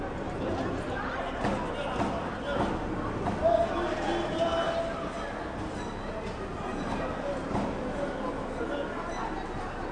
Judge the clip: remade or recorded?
recorded